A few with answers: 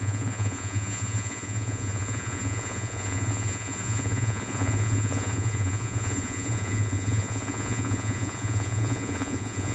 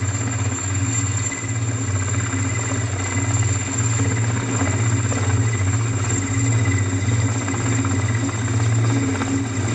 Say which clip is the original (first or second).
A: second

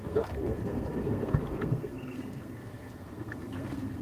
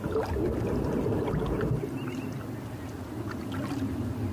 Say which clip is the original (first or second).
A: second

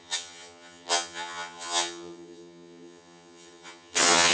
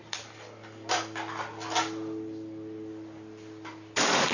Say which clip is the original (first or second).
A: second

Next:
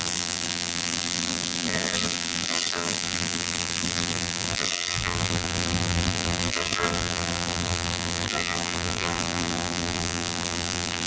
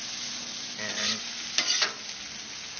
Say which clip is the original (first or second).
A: second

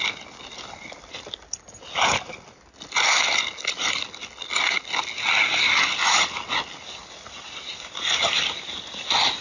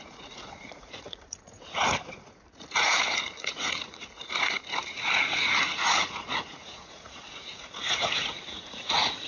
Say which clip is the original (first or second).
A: first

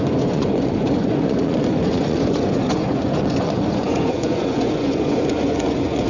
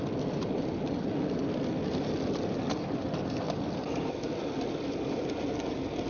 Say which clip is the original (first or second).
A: second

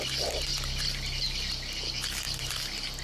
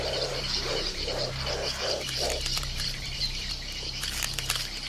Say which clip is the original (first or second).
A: first